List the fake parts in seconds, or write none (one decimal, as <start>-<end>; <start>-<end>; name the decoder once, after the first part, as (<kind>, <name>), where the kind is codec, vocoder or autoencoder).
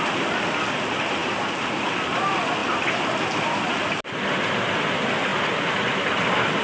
none